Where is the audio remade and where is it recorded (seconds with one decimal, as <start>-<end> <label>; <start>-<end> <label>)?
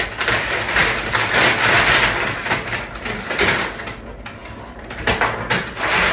0.0-6.1 recorded